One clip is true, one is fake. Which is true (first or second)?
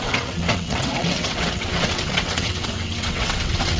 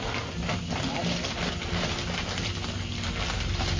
second